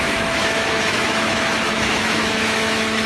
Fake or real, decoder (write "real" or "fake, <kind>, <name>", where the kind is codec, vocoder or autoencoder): fake, autoencoder, DAC-VAE